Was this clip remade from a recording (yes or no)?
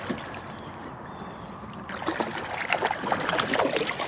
no